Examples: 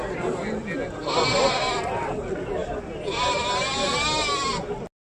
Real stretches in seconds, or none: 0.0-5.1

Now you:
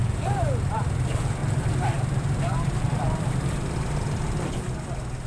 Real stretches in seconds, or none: 0.7-1.4; 4.6-5.3